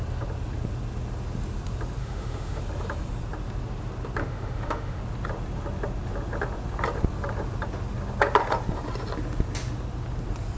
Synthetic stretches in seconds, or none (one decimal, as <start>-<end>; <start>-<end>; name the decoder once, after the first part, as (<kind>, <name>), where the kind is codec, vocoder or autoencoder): 2.0-2.6 (autoencoder, DAC-VAE); 4.2-5.0